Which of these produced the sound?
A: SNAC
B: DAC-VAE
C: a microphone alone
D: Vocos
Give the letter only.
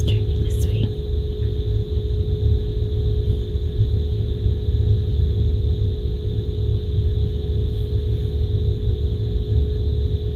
C